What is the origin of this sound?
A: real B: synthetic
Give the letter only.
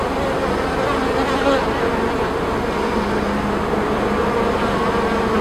A